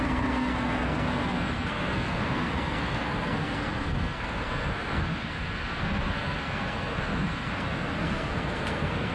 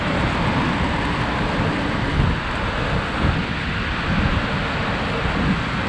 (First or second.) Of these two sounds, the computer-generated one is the first